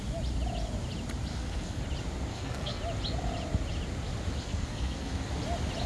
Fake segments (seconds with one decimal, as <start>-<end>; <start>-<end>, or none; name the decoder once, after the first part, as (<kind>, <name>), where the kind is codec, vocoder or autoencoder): 1.3-1.8 (codec, SNAC); 2.3-2.8; 4.4-5.3